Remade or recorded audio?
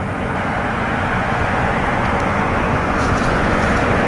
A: remade